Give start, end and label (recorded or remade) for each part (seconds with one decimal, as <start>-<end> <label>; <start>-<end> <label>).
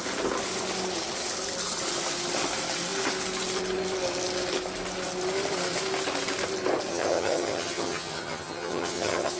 0.0-6.9 recorded; 6.9-9.4 remade